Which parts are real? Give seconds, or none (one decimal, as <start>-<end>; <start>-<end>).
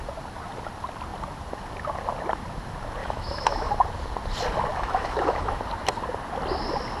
0.0-3.0; 3.7-4.7; 5.6-7.0